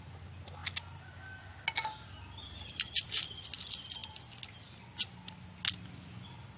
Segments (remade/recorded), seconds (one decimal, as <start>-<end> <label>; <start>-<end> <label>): 0.0-6.6 recorded